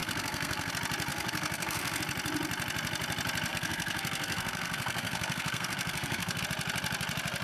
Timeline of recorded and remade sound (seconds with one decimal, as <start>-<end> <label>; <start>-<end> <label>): 0.0-0.7 remade; 0.7-1.1 recorded; 1.1-2.0 remade; 2.0-3.5 recorded; 3.5-6.4 remade; 6.4-7.4 recorded